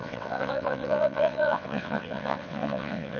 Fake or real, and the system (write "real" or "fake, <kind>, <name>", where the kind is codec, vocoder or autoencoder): fake, vocoder, WaveNeXt